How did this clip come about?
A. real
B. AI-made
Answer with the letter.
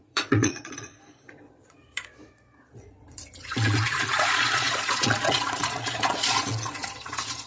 B